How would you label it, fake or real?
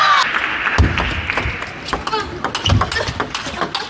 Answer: real